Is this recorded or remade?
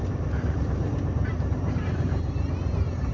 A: remade